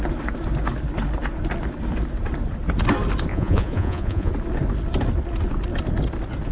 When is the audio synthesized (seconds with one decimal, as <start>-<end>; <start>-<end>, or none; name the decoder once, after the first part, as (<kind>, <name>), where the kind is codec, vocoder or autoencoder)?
3.3-4.3 (vocoder, Vocos)